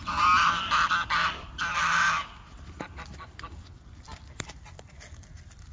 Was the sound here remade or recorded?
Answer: recorded